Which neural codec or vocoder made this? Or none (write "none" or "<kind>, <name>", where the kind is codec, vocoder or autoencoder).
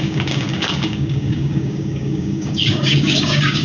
codec, DAC